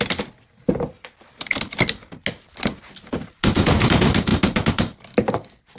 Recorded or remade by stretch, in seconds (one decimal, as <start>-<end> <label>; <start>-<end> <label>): 0.0-5.8 recorded